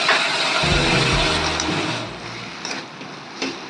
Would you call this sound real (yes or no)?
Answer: yes